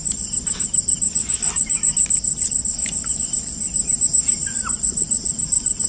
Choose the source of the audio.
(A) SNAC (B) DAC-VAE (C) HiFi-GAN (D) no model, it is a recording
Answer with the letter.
D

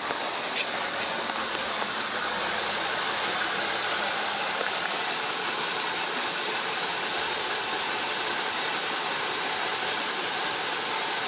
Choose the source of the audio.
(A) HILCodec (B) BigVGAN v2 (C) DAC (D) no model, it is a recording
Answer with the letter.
D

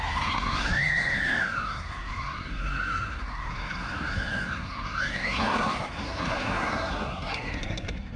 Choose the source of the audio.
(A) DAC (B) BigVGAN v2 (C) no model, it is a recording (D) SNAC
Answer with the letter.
D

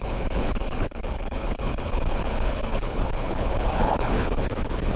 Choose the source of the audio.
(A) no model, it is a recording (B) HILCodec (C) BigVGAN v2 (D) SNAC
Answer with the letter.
B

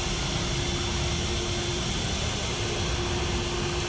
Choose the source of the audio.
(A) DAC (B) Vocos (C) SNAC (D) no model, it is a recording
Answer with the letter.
D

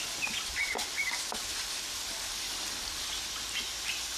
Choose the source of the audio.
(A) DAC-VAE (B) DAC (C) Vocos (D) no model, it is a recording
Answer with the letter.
D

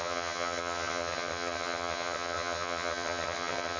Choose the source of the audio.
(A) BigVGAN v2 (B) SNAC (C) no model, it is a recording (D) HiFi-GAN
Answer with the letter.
D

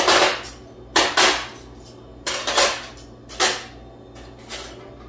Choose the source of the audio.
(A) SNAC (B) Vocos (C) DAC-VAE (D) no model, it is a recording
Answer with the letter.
D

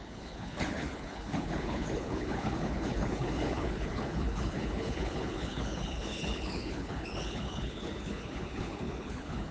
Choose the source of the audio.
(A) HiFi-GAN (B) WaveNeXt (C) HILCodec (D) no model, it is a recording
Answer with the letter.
C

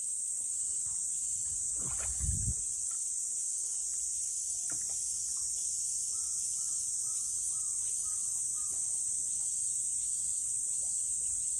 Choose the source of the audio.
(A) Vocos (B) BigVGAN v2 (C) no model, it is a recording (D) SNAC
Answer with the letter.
C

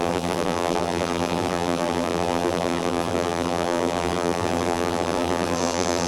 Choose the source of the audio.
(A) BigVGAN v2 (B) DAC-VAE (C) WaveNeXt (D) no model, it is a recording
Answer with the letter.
A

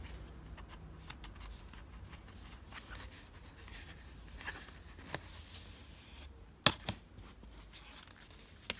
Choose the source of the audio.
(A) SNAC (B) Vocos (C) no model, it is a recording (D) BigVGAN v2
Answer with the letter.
C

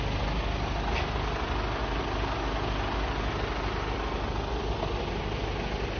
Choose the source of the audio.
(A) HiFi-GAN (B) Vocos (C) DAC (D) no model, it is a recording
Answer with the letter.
D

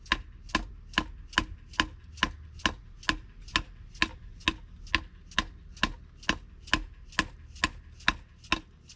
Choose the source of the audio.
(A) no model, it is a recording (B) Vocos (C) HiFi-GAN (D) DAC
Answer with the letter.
A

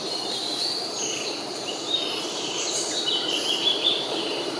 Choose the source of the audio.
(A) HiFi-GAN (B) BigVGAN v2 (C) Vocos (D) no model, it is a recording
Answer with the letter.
B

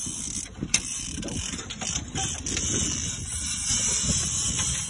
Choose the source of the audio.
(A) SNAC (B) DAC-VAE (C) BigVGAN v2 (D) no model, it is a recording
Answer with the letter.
D